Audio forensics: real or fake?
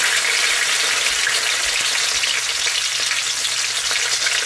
real